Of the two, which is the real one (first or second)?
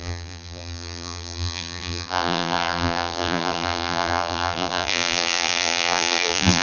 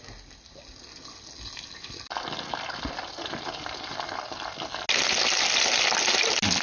second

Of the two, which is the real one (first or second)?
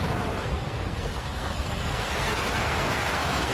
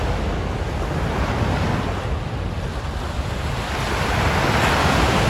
second